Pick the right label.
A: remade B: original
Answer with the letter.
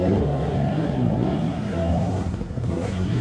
A